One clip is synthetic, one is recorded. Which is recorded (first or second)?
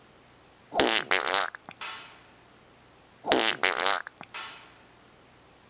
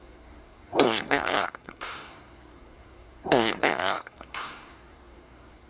first